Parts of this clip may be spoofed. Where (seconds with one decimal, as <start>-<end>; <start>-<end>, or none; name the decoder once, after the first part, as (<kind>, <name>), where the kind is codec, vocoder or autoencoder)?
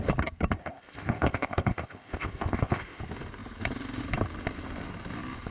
0.6-3.0 (codec, ZipCodec)